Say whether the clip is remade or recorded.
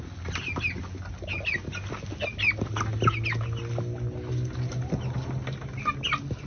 recorded